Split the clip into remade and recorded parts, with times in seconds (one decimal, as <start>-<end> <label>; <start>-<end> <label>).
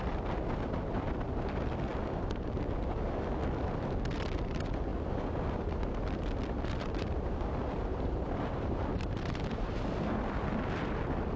0.0-7.9 recorded; 7.9-9.8 remade; 9.8-11.4 recorded